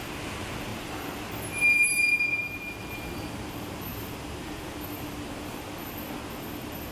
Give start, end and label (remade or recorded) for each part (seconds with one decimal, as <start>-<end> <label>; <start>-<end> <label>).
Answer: 0.0-0.7 recorded; 0.7-1.2 remade; 1.2-2.3 recorded; 2.3-2.9 remade; 2.9-6.9 recorded